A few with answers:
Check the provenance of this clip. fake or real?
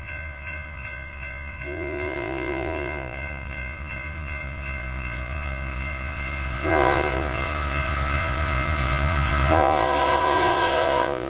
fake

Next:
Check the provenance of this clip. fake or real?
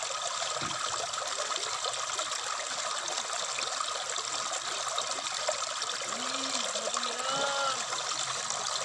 real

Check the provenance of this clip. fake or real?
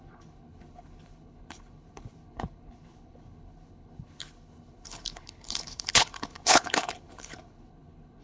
fake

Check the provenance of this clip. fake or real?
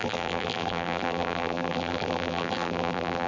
fake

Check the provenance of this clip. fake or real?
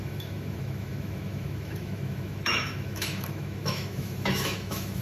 fake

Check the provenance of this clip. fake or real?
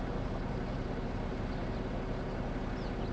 real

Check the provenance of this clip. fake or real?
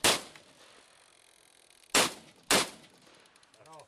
real